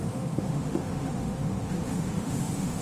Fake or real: fake